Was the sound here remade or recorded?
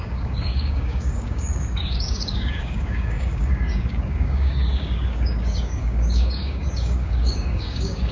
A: remade